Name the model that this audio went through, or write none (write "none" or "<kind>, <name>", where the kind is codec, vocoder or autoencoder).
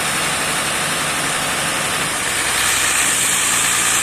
none